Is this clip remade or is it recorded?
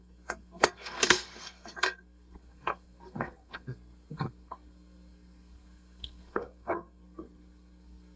remade